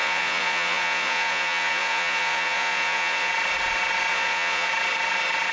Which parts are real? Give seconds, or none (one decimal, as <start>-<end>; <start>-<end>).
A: 3.3-4.1; 4.7-5.5